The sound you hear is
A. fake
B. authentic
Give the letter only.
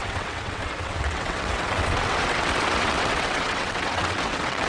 A